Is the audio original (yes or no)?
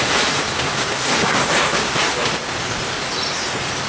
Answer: yes